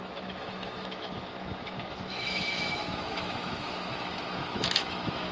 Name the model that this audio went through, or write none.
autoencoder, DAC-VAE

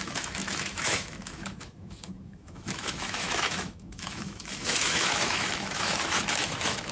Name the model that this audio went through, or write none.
autoencoder, DAC-VAE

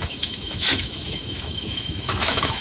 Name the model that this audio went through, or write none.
autoencoder, DAC-VAE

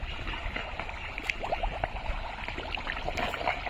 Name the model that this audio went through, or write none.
none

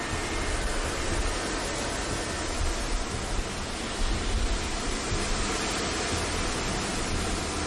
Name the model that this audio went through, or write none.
none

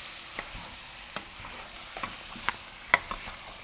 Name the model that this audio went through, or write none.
none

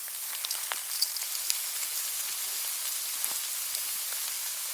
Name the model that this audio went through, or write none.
none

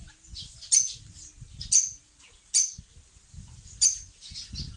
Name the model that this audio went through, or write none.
none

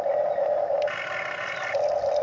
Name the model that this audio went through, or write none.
none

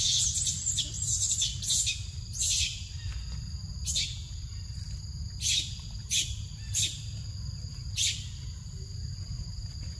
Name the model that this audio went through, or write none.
none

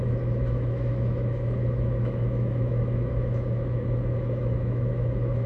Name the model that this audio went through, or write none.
autoencoder, DAC-VAE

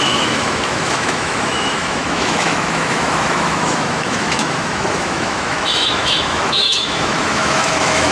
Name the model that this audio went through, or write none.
autoencoder, DAC-VAE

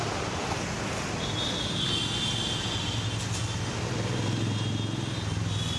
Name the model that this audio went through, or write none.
none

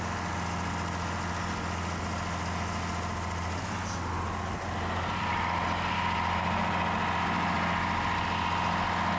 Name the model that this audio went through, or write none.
none